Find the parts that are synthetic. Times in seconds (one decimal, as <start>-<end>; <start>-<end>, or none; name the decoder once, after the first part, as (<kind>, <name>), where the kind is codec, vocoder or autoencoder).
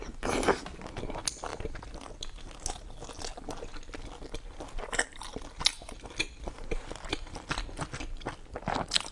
none